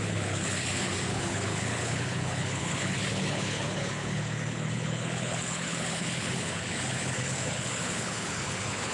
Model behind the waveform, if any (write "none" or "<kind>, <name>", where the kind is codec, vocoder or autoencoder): codec, HILCodec